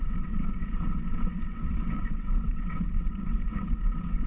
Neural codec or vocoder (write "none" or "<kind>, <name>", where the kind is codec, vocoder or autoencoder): vocoder, WaveNeXt